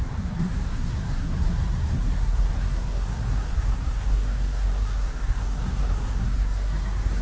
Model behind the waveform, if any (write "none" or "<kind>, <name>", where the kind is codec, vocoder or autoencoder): codec, SNAC